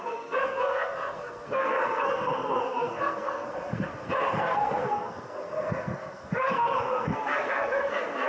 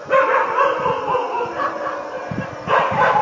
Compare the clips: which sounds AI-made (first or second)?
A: first